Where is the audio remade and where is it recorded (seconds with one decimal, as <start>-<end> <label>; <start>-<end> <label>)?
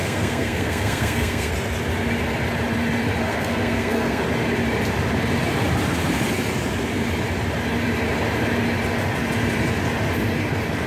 0.0-1.5 remade; 1.5-3.3 recorded; 3.3-4.2 remade; 4.2-10.9 recorded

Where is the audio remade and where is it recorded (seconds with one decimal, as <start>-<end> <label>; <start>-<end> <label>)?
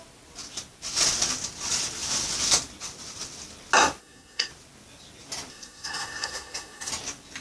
0.0-4.0 recorded; 4.0-4.5 remade; 4.5-5.5 recorded; 5.5-6.9 remade; 6.9-7.4 recorded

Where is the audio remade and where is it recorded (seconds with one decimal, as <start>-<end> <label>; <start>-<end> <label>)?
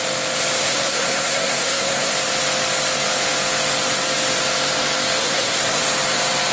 0.0-0.6 recorded; 0.6-2.1 remade; 2.1-5.2 recorded; 5.2-5.8 remade; 5.8-6.5 recorded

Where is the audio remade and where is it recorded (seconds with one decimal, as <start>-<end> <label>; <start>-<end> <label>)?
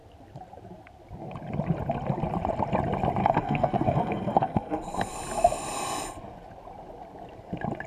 0.0-3.2 recorded; 3.2-5.1 remade; 5.1-7.9 recorded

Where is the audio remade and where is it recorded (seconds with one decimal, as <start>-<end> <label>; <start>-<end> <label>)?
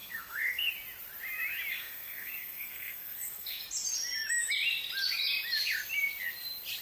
0.0-0.7 remade; 0.7-1.7 recorded; 1.7-3.6 remade; 3.6-6.8 recorded